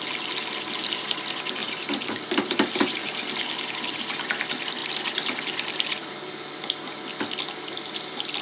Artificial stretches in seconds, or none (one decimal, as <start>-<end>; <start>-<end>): 1.6-3.1